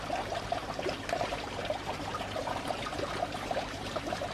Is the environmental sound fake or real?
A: fake